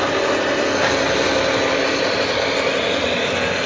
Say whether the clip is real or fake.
real